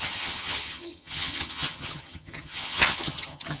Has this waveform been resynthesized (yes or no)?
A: yes